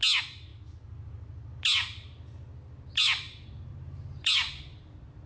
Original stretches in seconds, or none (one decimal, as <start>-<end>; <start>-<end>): 0.0-5.3